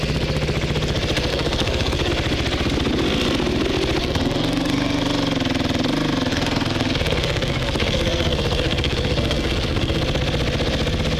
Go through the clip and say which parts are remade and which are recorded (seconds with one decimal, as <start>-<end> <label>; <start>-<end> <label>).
0.0-1.3 recorded; 1.3-2.1 remade; 2.1-4.0 recorded; 4.0-5.0 remade; 5.0-6.3 recorded; 6.3-10.0 remade; 10.0-11.2 recorded

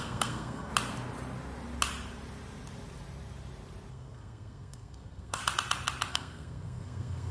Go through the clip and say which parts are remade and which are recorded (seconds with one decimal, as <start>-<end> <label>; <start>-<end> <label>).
0.0-0.7 remade; 0.7-3.9 recorded; 3.9-5.4 remade; 5.4-6.1 recorded; 6.1-7.3 remade